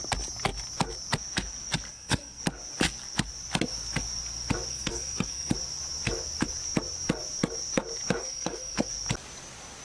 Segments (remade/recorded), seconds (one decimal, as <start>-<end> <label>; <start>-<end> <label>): 0.0-1.9 recorded; 1.9-2.4 remade; 2.4-4.7 recorded; 4.7-5.5 remade; 5.5-8.2 recorded; 8.2-8.9 remade; 8.9-9.8 recorded